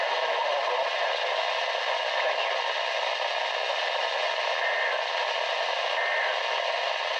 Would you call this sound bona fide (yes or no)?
yes